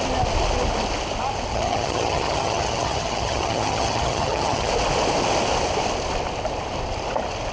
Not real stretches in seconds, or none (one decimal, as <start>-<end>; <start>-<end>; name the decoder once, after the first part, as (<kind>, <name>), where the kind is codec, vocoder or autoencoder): 1.5-4.7 (vocoder, HiFi-GAN)